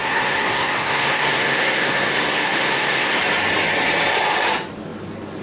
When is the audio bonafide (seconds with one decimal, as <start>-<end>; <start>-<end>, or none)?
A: 3.2-5.4